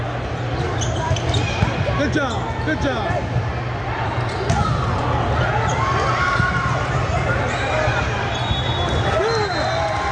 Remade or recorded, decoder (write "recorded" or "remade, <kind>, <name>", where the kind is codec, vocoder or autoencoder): recorded